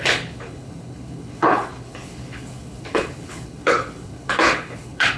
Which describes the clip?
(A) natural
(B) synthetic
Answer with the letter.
B